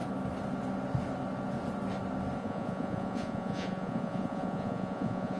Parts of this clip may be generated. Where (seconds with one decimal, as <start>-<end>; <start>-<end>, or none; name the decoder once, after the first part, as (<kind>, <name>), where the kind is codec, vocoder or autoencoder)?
2.4-5.4 (vocoder, Vocos)